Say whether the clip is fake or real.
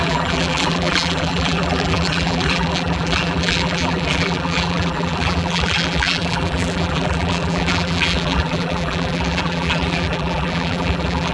fake